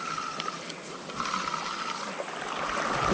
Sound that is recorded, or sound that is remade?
recorded